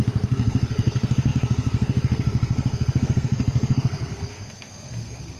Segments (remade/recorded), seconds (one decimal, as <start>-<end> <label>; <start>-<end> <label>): 0.0-5.4 remade